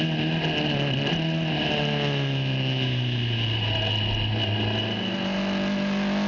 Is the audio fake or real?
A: real